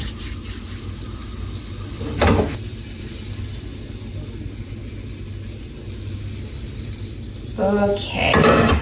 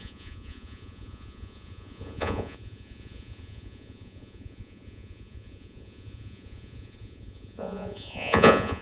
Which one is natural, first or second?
first